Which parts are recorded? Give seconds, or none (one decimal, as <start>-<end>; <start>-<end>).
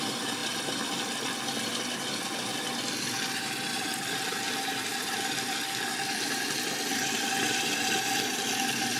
0.4-1.7